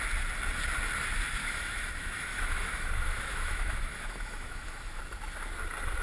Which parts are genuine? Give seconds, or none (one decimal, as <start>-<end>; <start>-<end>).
0.0-1.4; 5.0-6.0